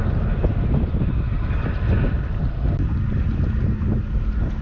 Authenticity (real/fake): real